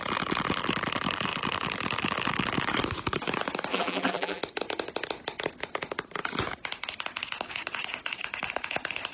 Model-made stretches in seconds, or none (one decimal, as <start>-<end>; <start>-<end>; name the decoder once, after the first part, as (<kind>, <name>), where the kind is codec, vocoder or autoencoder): 3.7-4.4 (vocoder, BigVGAN v2)